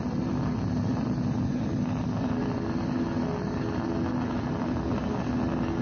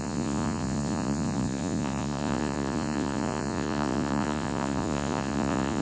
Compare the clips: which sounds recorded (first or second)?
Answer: first